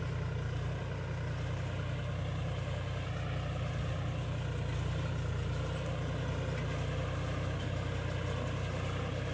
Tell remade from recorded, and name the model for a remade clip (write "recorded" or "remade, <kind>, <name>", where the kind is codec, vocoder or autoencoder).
recorded